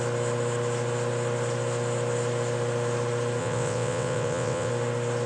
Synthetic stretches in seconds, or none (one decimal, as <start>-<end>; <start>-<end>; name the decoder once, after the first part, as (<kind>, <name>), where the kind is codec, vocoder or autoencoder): 3.4-4.7 (vocoder, WaveNeXt)